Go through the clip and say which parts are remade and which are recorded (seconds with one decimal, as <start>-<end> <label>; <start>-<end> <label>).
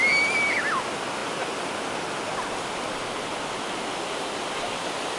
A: 0.0-5.2 recorded